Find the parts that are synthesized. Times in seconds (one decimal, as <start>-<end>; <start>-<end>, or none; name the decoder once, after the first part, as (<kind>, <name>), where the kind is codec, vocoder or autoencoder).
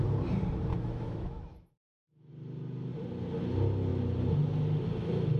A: 0.7-2.3 (autoencoder, DAC-VAE)